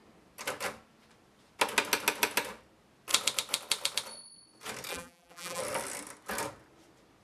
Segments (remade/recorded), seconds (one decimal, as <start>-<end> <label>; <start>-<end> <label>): 0.0-4.9 recorded; 4.9-5.6 remade; 5.6-7.2 recorded